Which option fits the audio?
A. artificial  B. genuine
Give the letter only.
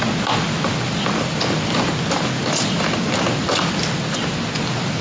B